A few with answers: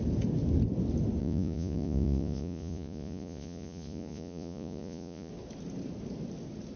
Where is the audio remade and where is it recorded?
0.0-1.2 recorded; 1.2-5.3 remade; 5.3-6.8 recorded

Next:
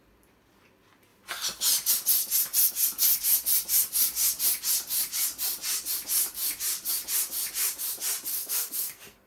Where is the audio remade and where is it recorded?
0.0-8.3 recorded; 8.3-9.3 remade

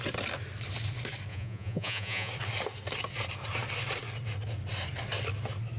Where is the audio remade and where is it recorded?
0.0-1.3 recorded; 1.3-2.3 remade; 2.3-5.8 recorded

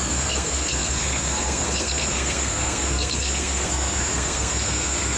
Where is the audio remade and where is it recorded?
0.0-5.2 remade

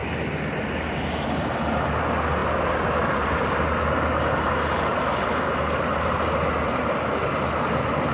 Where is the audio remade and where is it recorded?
0.0-8.1 recorded